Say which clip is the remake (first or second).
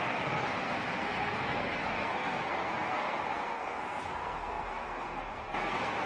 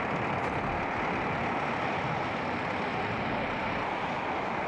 first